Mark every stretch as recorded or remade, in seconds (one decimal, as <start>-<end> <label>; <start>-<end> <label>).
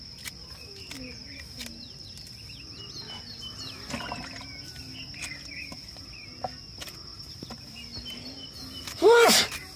0.0-7.1 recorded; 7.1-7.6 remade; 7.6-9.8 recorded